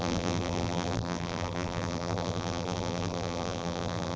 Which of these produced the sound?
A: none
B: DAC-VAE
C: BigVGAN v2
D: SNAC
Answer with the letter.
C